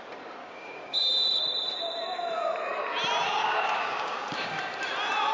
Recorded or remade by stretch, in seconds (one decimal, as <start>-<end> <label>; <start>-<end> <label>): 0.0-0.4 recorded; 0.4-1.1 remade; 1.1-3.4 recorded; 3.4-4.6 remade; 4.6-5.3 recorded